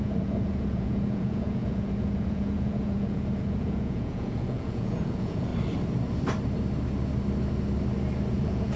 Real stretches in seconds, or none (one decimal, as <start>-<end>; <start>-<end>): 5.5-8.3

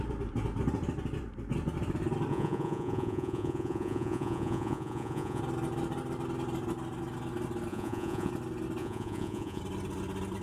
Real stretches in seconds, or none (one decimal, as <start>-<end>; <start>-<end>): 0.0-2.3; 5.4-7.7; 8.3-8.8; 9.6-10.4

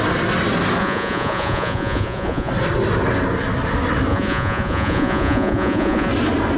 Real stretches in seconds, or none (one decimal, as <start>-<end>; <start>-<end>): 0.0-0.8; 2.5-4.1; 6.1-6.6

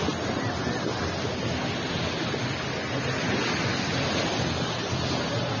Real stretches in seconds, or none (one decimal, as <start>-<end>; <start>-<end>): 0.0-5.6

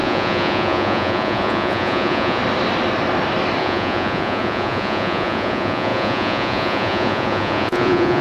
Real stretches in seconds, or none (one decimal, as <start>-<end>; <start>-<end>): 2.4-3.6